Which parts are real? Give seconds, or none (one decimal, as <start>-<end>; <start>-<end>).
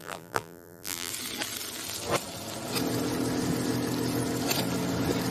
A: 1.1-5.3